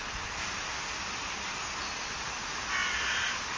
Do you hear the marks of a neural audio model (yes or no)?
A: no